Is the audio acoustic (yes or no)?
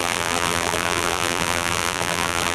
no